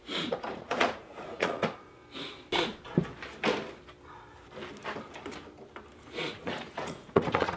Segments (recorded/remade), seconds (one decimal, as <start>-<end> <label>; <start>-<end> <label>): 0.0-2.0 remade; 2.0-6.0 recorded; 6.0-7.6 remade